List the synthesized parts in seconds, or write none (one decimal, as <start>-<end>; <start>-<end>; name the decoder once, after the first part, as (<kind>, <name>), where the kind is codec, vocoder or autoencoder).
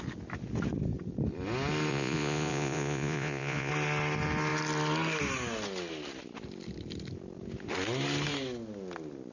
1.9-3.7 (vocoder, Vocos)